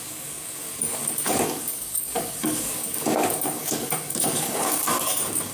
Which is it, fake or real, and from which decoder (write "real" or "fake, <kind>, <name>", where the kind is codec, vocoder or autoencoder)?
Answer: fake, codec, DAC